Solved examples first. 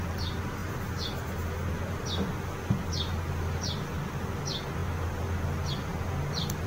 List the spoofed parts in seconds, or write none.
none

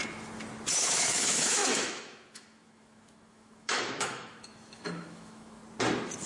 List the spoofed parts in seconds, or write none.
0.7-5.6 (autoencoder, DAC-VAE)

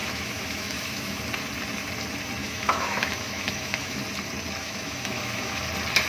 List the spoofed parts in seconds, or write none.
0.0-1.2 (autoencoder, DAC-VAE); 2.4-4.0; 4.6-5.6

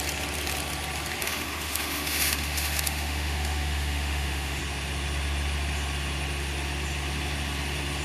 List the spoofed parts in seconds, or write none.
1.2-4.6 (autoencoder, DAC-VAE)

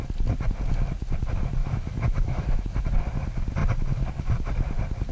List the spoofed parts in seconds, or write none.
1.6-2.6 (autoencoder, DAC-VAE)

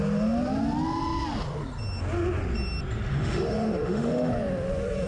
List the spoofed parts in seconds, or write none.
3.1-4.3 (autoencoder, DAC-VAE)